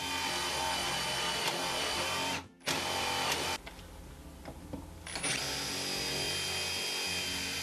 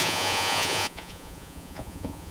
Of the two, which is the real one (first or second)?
first